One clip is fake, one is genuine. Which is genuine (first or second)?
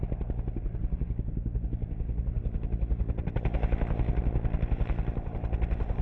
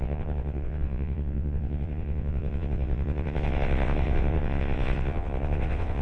first